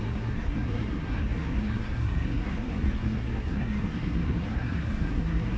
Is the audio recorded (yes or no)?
no